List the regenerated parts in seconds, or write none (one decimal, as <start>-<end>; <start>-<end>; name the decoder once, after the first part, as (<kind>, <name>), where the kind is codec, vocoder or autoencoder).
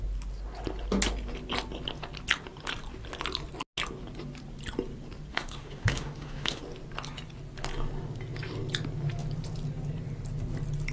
5.3-6.6 (autoencoder, DAC-VAE)